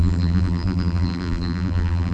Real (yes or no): no